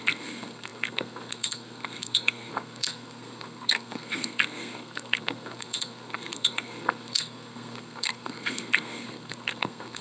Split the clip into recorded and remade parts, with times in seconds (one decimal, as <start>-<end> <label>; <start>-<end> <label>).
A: 0.0-10.0 remade